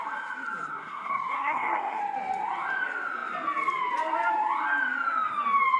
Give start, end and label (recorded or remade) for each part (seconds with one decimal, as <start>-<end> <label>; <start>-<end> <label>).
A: 0.0-0.7 recorded; 0.7-2.0 remade; 2.0-5.8 recorded